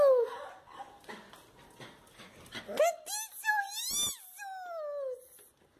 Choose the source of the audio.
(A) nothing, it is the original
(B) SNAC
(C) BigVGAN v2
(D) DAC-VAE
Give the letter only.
A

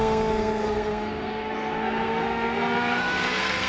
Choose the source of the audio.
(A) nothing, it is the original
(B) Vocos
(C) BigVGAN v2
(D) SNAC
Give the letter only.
D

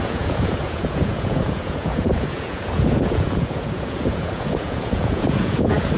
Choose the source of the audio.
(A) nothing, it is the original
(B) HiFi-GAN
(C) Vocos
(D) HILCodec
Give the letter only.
C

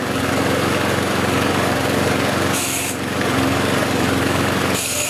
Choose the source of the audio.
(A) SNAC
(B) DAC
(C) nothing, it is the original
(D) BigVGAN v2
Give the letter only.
B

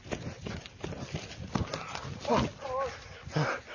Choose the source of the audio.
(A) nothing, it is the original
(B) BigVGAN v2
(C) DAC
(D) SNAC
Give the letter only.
A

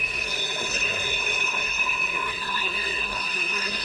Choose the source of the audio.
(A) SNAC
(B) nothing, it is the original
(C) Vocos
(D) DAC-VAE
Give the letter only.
A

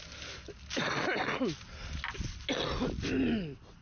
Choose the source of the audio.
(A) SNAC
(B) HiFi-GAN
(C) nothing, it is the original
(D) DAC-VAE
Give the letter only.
C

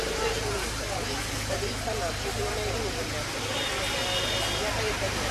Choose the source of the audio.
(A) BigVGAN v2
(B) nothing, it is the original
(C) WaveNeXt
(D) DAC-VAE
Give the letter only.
B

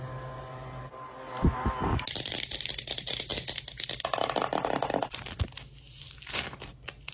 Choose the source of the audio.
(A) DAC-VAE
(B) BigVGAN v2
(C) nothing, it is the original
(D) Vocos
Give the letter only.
C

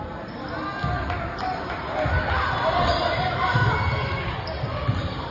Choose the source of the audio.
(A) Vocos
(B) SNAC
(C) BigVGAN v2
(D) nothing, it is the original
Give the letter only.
D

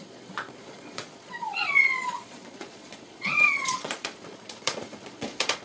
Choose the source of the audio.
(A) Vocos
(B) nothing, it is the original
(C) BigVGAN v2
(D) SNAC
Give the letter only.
A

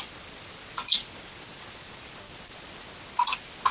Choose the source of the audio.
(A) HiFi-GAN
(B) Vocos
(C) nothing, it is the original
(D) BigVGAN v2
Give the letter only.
C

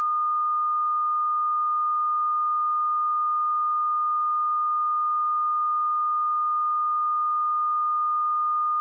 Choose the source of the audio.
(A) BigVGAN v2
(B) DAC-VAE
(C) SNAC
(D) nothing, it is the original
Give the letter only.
D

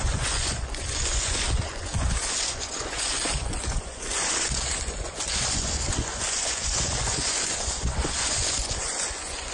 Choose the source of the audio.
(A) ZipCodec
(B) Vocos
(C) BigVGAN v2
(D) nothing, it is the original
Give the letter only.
B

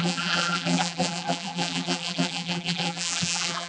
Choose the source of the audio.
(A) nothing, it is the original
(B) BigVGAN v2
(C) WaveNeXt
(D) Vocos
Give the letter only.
B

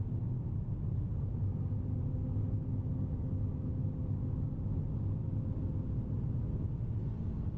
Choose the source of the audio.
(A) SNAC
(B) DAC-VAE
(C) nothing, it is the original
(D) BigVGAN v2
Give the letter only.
C